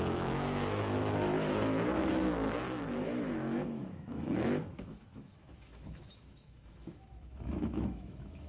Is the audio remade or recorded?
remade